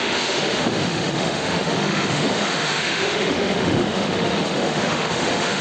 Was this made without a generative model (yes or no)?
no